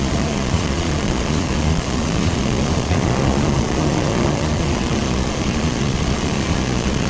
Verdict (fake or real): fake